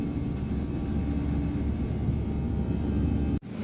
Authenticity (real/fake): real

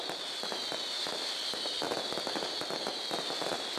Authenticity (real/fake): fake